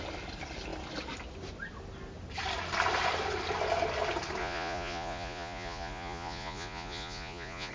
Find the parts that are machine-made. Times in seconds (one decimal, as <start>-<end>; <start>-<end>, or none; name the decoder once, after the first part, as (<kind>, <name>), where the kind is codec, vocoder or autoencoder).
4.4-7.7 (vocoder, Vocos)